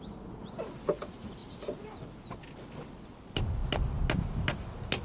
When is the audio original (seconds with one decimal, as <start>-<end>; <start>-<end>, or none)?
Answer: 0.0-5.0